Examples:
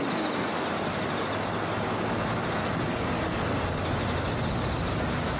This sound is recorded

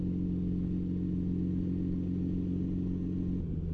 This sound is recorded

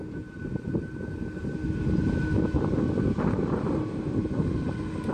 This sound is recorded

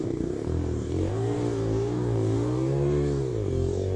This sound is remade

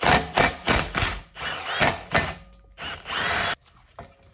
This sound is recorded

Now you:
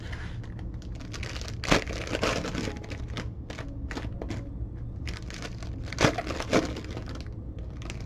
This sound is recorded